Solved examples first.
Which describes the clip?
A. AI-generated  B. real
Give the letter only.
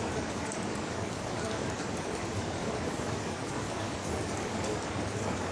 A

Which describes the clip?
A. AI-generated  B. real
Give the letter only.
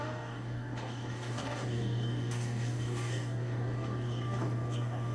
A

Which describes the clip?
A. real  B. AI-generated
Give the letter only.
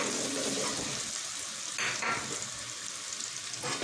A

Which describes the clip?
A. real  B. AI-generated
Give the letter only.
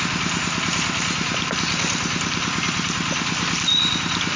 A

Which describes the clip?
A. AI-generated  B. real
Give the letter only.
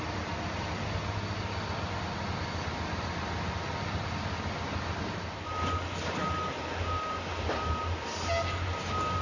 B